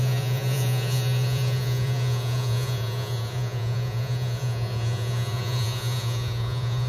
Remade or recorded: remade